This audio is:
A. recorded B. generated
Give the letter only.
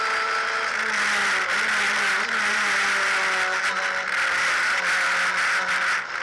A